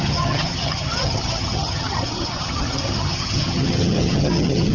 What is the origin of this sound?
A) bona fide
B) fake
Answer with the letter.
B